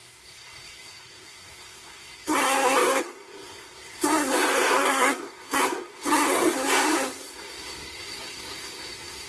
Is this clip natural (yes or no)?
no